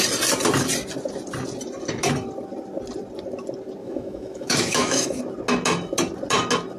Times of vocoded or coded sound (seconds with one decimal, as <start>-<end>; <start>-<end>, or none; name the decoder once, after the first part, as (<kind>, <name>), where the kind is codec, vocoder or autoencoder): 3.8-5.2 (autoencoder, DAC-VAE)